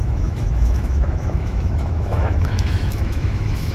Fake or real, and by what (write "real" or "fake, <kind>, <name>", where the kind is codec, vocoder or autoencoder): fake, autoencoder, DAC-VAE